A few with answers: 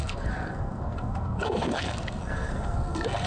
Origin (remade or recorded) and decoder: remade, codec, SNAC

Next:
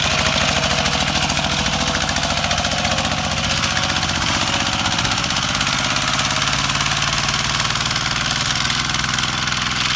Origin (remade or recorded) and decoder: recorded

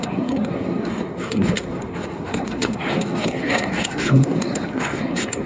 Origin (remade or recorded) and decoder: remade, codec, SNAC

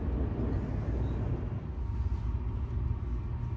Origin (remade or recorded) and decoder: recorded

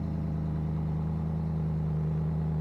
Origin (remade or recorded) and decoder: recorded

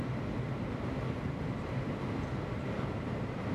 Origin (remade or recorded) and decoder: recorded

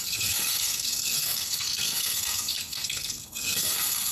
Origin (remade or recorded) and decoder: remade, codec, SNAC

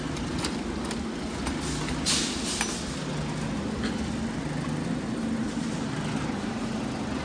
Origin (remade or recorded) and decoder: recorded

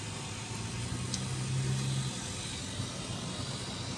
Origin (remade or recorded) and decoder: recorded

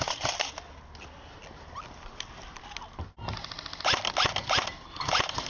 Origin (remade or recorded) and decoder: recorded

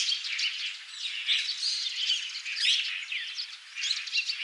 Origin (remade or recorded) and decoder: recorded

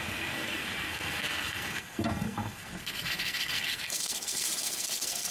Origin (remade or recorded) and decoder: remade, codec, SNAC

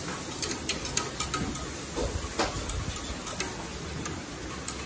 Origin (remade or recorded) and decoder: recorded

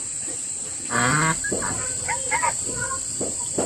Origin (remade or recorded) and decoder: recorded